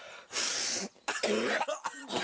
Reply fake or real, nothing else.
real